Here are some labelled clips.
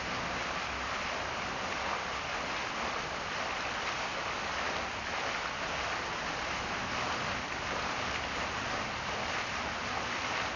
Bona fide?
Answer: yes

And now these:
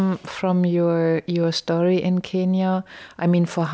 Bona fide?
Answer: yes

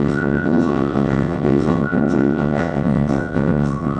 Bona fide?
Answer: no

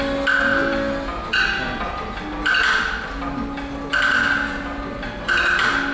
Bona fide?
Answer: yes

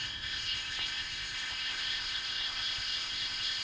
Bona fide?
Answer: no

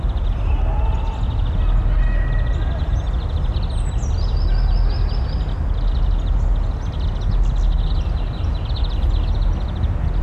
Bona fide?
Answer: yes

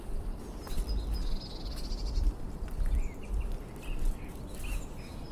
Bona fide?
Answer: yes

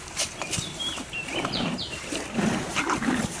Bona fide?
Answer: no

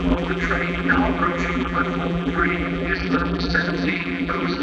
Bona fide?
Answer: no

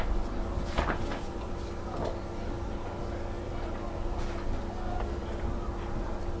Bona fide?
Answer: yes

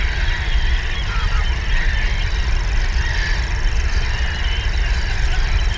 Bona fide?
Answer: yes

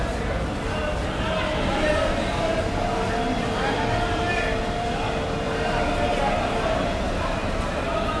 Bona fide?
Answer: yes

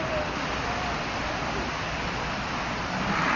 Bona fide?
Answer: yes